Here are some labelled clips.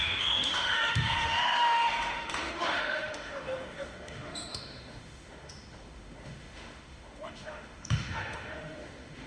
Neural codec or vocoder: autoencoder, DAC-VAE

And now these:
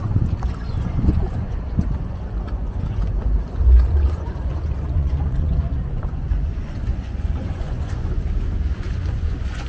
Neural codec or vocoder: vocoder, Vocos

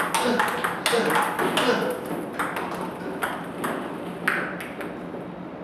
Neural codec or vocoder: none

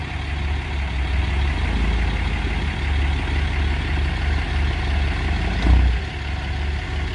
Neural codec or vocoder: none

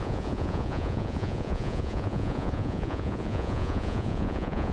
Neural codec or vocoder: vocoder, Vocos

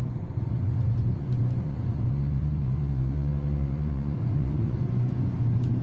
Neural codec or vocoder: vocoder, Vocos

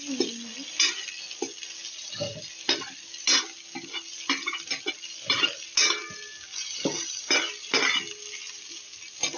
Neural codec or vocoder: none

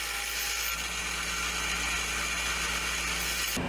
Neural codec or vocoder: none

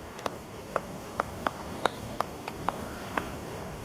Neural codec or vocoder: codec, DAC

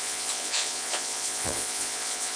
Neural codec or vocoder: vocoder, Vocos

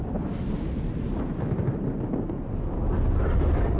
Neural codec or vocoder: none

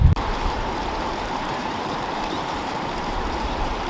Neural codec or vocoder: vocoder, BigVGAN v2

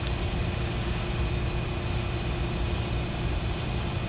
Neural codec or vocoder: none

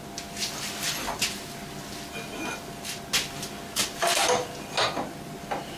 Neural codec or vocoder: none